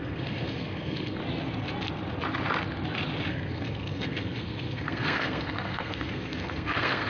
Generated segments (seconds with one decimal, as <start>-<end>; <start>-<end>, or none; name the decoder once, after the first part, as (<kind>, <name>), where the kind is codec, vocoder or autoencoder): 0.0-1.2 (codec, SNAC); 3.3-7.1